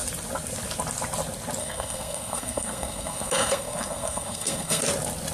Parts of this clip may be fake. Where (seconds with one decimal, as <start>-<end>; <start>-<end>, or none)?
1.6-4.8